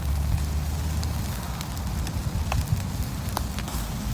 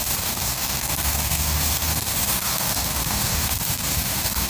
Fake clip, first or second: second